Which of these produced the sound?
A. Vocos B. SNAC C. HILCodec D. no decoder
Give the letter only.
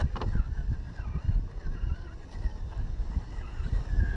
D